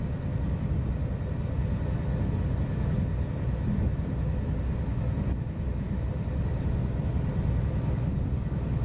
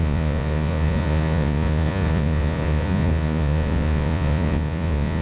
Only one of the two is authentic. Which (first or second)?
first